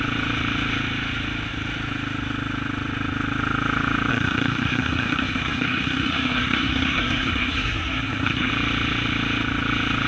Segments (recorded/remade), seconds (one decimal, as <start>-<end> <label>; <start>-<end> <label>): 0.0-4.1 recorded; 4.1-8.5 remade; 8.5-10.1 recorded